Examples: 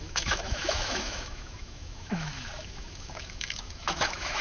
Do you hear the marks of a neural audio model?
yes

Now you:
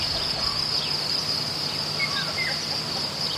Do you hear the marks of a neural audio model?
no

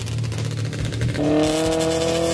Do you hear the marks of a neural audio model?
no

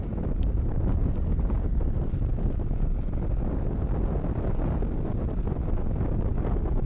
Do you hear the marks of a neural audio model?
no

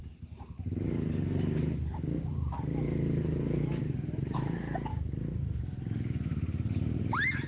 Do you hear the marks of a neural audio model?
no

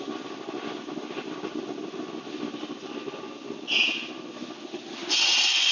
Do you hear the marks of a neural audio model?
no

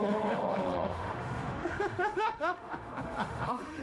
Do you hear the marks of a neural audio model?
yes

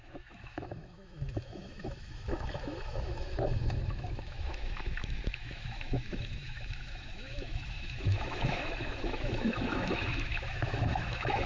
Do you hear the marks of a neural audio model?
yes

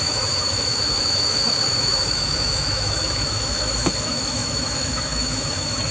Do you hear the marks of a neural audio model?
yes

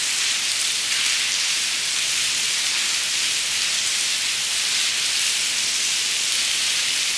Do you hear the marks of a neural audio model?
no